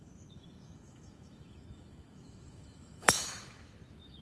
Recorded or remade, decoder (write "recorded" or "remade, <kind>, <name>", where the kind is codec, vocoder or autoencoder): remade, autoencoder, DAC-VAE